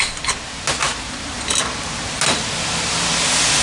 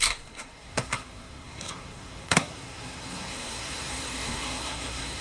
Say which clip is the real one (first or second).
first